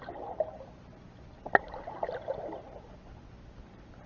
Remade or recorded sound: recorded